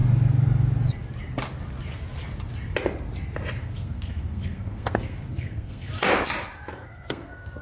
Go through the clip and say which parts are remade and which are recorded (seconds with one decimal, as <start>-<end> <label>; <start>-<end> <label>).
0.0-3.6 recorded; 3.6-5.9 remade; 5.9-6.8 recorded; 6.8-7.6 remade